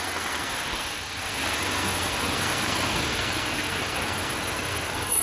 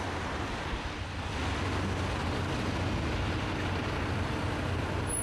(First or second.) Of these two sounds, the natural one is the second